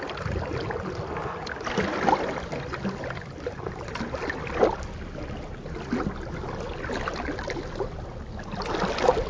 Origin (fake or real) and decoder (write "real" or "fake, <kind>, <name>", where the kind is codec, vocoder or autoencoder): real